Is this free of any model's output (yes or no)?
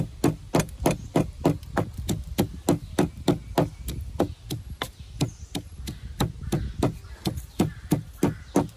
yes